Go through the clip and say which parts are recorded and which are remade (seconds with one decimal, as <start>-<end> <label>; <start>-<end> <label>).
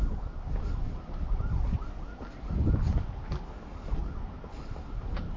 0.0-5.4 recorded